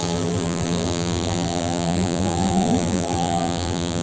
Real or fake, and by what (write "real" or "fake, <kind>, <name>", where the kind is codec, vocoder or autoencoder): fake, vocoder, BigVGAN v2